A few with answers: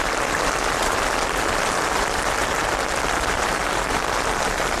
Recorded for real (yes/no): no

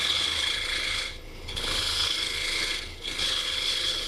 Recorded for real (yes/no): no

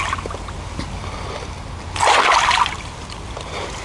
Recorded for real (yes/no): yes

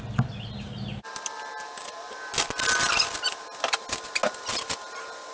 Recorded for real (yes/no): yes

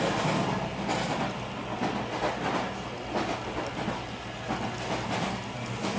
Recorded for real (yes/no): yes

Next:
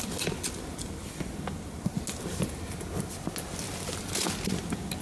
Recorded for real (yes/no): yes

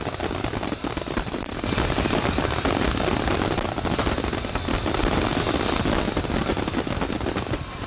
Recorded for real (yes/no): yes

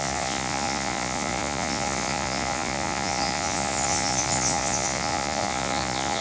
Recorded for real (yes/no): no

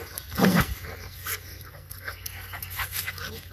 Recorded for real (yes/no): no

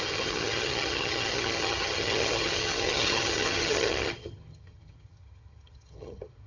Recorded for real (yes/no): no